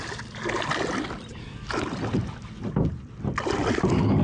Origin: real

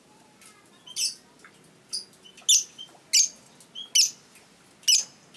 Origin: real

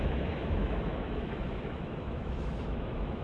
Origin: fake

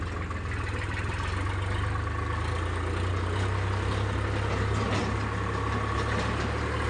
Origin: real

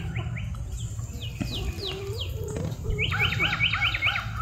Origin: real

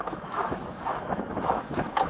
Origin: fake